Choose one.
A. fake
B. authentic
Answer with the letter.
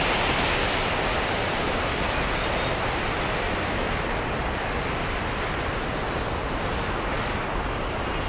B